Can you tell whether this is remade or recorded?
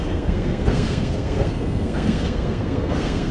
remade